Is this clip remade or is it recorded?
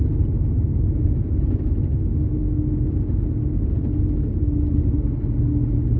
recorded